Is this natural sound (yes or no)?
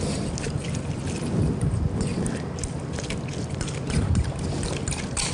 yes